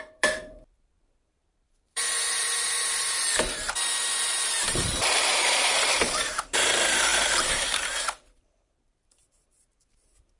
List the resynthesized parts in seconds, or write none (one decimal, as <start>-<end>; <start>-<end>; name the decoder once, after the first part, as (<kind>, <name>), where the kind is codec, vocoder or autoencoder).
0.0-10.4 (vocoder, BigVGAN v2)